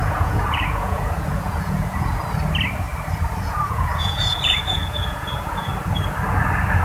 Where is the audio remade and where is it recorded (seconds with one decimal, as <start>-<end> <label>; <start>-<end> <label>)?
0.0-2.2 remade; 2.2-3.4 recorded; 3.4-5.7 remade; 5.7-6.8 recorded